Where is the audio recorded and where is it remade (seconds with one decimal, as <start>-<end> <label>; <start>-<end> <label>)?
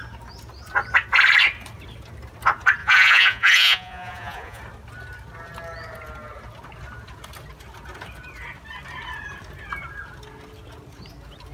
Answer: 0.0-2.8 recorded; 2.8-4.6 remade; 4.6-11.5 recorded